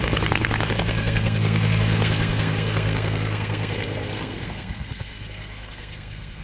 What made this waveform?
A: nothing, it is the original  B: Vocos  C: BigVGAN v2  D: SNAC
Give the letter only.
D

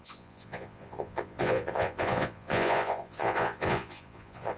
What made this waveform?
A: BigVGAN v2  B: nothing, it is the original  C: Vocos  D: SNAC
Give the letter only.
C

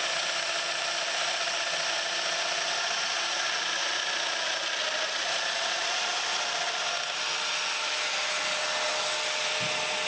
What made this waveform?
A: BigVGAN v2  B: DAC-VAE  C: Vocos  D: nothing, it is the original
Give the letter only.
D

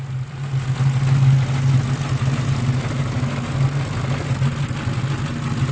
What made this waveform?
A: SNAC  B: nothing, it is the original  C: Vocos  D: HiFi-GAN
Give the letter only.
B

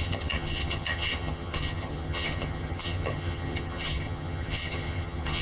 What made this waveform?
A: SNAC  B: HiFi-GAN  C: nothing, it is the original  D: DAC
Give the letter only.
B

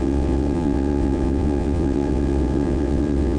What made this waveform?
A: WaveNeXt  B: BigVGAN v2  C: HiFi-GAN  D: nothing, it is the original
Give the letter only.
A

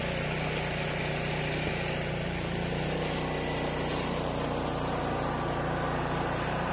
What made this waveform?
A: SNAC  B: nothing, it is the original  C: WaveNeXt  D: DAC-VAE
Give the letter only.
B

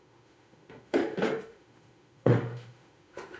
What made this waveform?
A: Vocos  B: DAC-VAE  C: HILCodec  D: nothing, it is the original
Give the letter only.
B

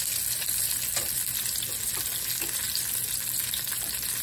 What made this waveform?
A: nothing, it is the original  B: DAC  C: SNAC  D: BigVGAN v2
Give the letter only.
A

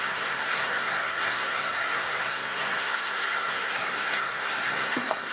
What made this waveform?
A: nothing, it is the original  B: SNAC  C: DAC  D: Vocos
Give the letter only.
B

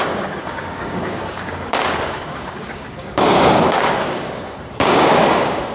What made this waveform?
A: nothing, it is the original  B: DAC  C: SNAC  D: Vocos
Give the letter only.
B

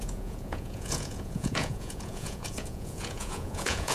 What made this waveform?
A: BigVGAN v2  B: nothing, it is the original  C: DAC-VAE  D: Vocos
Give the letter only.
D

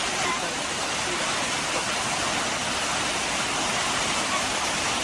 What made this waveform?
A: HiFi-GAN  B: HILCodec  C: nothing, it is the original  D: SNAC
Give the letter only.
C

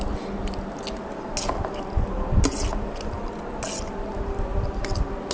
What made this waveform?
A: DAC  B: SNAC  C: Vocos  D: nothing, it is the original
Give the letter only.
D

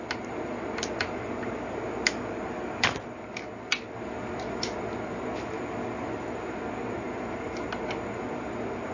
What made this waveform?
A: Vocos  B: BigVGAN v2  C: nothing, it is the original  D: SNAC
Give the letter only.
C